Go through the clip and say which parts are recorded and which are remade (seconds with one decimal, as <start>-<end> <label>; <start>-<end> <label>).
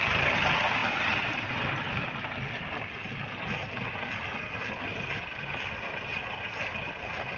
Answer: 0.0-7.4 recorded